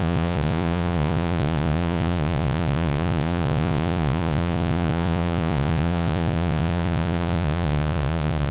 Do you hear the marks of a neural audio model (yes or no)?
yes